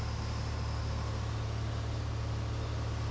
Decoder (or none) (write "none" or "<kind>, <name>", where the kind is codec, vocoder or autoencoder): none